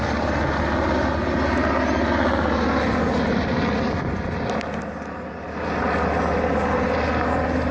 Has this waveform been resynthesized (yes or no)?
no